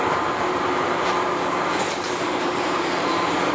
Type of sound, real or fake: fake